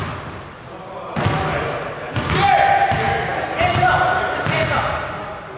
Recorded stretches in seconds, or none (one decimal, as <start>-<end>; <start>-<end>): 0.0-5.6